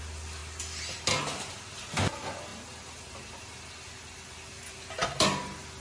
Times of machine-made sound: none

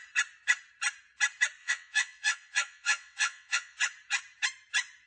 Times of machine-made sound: 1.6-3.8 (vocoder, WaveNeXt)

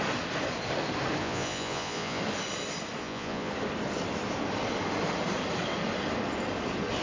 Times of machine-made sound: 1.2-2.2 (vocoder, Vocos); 3.0-3.5

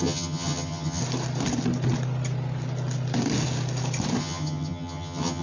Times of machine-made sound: 0.0-1.0 (vocoder, HiFi-GAN); 4.2-5.4

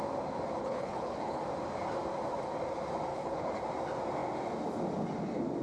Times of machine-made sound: 0.6-1.4 (codec, HILCodec); 3.1-3.6